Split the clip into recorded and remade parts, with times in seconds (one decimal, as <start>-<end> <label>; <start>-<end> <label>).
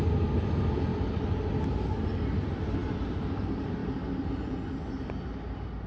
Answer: 0.0-5.9 recorded